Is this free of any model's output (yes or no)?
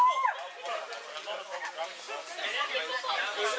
yes